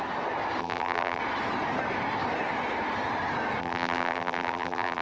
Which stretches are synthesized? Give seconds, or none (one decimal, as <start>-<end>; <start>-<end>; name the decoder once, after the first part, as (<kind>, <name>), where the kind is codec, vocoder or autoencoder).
0.6-1.2 (vocoder, BigVGAN v2); 3.6-5.0